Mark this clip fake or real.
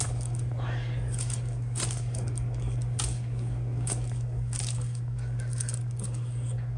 fake